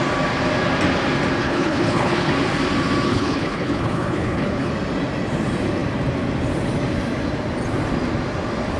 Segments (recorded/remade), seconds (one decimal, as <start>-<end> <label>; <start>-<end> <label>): 0.0-1.4 recorded; 1.4-2.3 remade; 2.3-3.1 recorded; 3.1-4.7 remade; 4.7-8.8 recorded